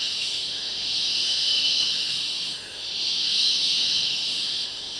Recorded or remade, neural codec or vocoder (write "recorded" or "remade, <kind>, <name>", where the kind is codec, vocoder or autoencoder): remade, autoencoder, DAC-VAE